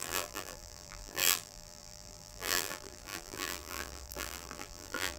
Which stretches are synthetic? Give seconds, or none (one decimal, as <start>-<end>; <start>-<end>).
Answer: 0.0-5.2